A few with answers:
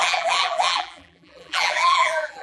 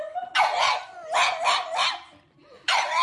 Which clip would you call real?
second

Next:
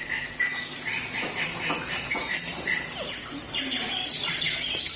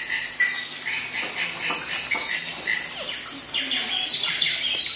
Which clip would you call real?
second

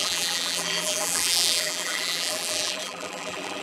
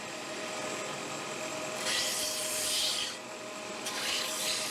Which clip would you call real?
second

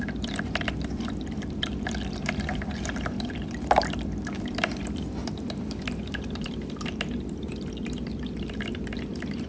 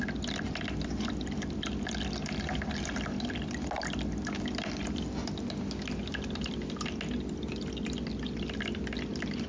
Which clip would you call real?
second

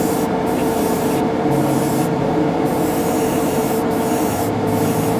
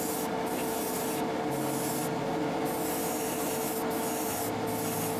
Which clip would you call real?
second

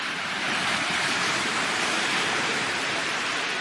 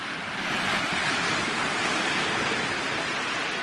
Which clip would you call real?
second